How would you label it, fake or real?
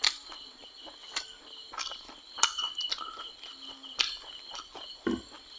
real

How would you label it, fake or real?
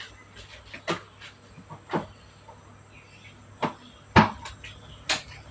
real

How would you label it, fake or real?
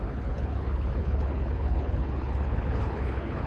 fake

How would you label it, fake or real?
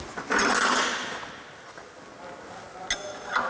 real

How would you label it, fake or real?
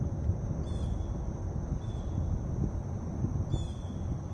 real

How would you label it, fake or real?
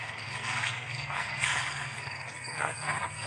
fake